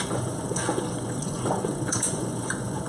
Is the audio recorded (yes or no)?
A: no